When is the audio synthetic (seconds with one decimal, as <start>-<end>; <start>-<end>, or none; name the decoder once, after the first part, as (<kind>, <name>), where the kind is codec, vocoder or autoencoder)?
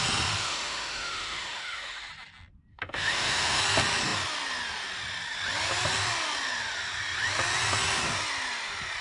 0.4-2.1 (autoencoder, DAC-VAE); 2.7-3.6